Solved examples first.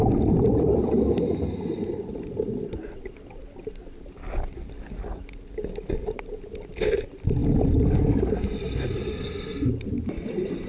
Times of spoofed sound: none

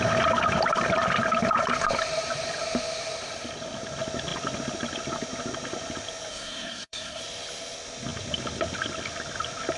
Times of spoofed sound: 6.3-7.2 (codec, SNAC)

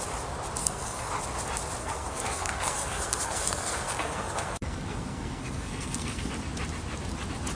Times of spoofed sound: 0.6-1.1 (codec, SNAC); 1.8-6.3

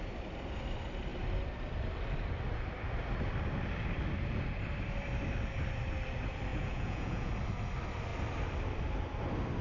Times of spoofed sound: 6.5-7.3 (vocoder, Vocos)

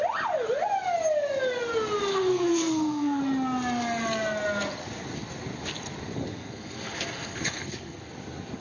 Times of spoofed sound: 2.1-3.2 (codec, SNAC); 6.3-8.1

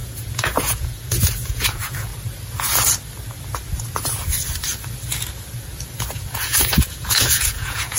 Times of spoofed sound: 0.0-2.1 (vocoder, Vocos); 6.1-8.0

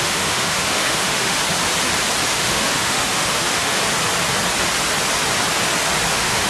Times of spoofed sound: 0.0-1.4 (autoencoder, DAC-VAE); 2.3-3.8; 6.1-6.5

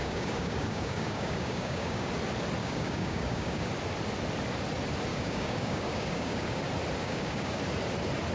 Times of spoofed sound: 0.0-2.1 (codec, DAC); 2.6-3.7; 5.1-6.6; 7.0-7.6